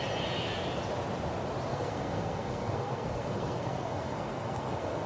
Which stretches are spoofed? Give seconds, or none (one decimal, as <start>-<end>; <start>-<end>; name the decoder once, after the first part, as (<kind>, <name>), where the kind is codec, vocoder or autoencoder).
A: 1.7-5.1 (codec, SNAC)

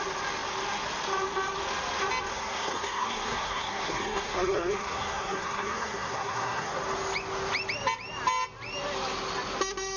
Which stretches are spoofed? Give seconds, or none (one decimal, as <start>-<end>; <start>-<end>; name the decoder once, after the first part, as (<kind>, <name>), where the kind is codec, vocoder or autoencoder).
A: 2.3-6.7 (codec, SNAC)

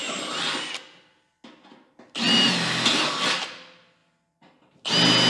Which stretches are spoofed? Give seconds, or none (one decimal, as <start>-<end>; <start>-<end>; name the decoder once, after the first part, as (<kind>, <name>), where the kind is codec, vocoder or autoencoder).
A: none